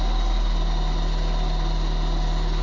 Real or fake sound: real